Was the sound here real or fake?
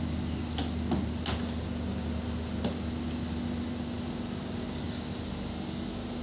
real